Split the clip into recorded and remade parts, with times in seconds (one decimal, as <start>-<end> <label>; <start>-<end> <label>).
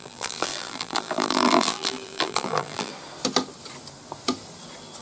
0.0-2.9 remade; 2.9-5.0 recorded